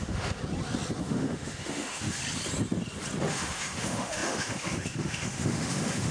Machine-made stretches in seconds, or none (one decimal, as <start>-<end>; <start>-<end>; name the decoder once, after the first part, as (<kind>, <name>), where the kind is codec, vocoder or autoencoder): 0.0-0.4 (autoencoder, DAC-VAE); 1.0-2.2; 3.3-6.1